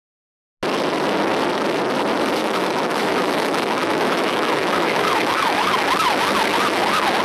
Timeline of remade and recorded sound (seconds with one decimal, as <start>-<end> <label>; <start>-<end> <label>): 0.0-2.4 recorded; 2.4-5.7 remade; 5.7-7.2 recorded